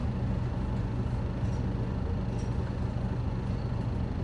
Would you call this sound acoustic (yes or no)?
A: no